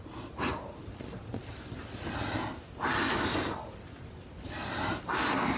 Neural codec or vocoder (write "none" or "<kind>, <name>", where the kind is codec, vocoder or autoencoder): none